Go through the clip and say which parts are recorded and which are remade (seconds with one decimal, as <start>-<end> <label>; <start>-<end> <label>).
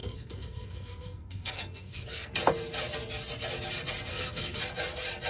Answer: 0.0-2.3 remade; 2.3-4.1 recorded; 4.1-4.6 remade; 4.6-5.3 recorded